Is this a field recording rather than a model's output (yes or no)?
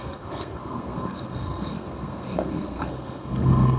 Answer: no